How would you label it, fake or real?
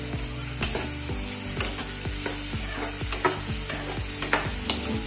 real